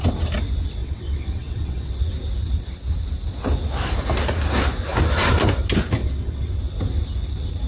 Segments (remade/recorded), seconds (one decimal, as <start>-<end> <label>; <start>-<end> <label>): 0.0-0.8 recorded; 0.8-2.0 remade; 2.0-6.0 recorded; 6.0-6.5 remade; 6.5-7.7 recorded